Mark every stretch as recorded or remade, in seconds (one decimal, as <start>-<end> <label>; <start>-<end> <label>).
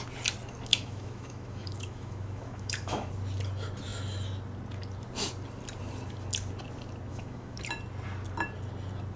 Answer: 0.0-0.7 recorded; 0.7-3.1 remade; 3.1-7.1 recorded; 7.1-7.6 remade; 7.6-9.2 recorded